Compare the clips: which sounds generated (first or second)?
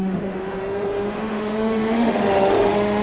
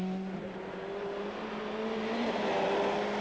first